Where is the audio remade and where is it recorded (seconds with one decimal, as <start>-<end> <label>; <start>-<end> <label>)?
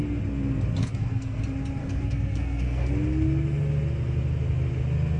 0.0-0.8 recorded; 0.8-1.4 remade; 1.4-1.8 recorded; 1.8-2.9 remade; 2.9-5.2 recorded